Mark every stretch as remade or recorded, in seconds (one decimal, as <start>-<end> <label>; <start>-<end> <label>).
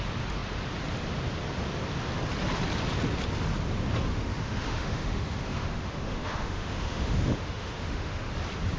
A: 0.0-4.1 recorded; 4.1-8.3 remade; 8.3-8.8 recorded